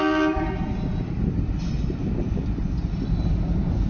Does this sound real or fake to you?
real